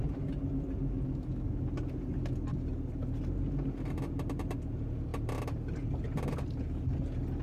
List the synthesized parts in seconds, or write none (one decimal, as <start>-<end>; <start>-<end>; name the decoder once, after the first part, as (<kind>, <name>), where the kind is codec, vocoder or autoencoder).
none